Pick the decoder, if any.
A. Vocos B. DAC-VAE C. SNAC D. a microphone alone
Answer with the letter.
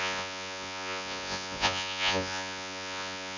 A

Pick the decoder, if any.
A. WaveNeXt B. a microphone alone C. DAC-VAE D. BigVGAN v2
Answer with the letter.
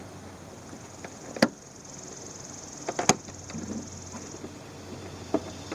B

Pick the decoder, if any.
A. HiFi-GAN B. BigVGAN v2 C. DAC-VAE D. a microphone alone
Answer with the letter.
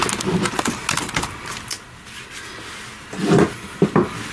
D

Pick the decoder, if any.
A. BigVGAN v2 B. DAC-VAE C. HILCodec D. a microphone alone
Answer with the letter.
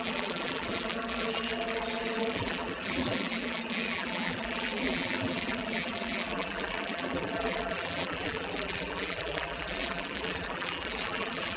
A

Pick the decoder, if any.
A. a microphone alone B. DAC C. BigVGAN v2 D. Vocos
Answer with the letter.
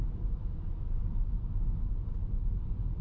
A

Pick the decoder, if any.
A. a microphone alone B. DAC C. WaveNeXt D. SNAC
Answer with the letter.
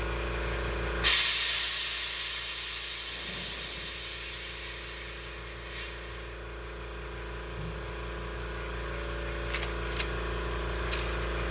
A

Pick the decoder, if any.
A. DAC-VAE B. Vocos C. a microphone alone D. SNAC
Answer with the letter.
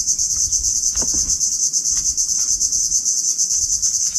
C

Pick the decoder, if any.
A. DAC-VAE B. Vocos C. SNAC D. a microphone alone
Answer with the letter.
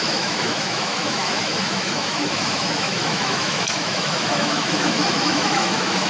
A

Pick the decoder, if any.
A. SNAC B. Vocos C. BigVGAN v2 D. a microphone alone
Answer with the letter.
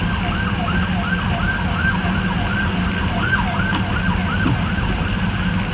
D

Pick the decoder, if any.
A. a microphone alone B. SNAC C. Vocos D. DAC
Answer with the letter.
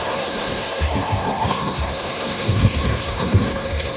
B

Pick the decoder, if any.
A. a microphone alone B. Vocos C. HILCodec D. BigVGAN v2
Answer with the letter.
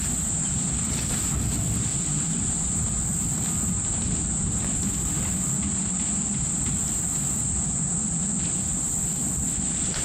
A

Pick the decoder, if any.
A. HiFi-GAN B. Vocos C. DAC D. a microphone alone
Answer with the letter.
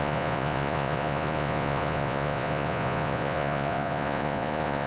B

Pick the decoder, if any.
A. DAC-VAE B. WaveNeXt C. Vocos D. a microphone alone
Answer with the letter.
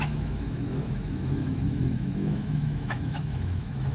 A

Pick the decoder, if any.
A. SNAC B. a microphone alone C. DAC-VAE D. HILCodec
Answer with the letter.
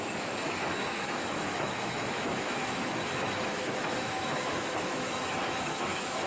C